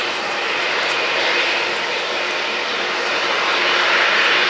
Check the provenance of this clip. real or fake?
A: fake